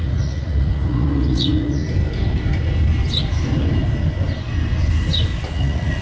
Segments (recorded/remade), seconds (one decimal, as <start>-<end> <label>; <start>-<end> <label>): 0.0-1.8 remade; 1.8-5.4 recorded; 5.4-6.0 remade